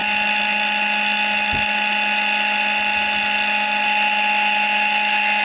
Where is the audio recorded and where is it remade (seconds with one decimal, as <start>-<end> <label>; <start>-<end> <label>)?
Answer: 0.0-5.4 recorded